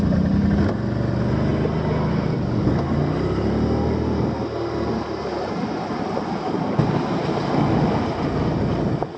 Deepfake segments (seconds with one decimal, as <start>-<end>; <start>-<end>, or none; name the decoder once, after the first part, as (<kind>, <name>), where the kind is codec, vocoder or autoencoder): none